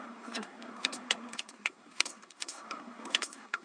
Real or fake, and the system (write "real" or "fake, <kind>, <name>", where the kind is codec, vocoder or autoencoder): fake, codec, SNAC